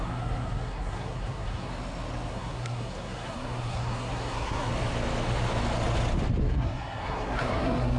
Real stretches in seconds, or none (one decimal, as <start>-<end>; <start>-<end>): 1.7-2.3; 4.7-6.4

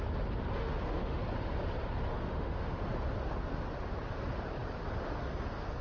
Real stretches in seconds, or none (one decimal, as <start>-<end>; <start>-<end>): 0.0-0.6; 1.2-2.1; 2.8-5.8

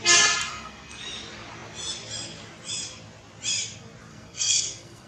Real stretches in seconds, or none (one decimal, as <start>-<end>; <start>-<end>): 0.0-0.5; 1.0-4.1